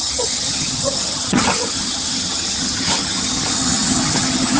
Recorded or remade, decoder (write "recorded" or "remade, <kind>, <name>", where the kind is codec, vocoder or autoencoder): remade, vocoder, HiFi-GAN